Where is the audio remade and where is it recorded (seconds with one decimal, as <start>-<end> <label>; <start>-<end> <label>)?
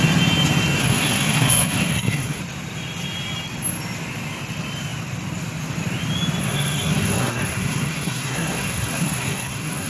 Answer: 0.0-0.8 recorded; 0.8-2.4 remade; 2.4-6.4 recorded; 6.4-9.9 remade